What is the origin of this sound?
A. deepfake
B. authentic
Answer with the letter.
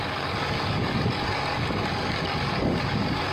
A